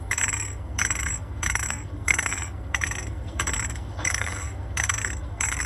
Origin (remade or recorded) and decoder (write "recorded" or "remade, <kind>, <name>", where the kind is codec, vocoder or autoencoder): remade, codec, SNAC